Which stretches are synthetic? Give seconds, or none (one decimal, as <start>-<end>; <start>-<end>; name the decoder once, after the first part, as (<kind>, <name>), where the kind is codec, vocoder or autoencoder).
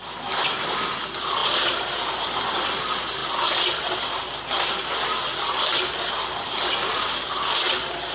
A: none